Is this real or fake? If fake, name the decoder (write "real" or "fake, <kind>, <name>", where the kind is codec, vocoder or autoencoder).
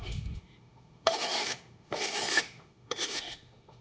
fake, autoencoder, DAC-VAE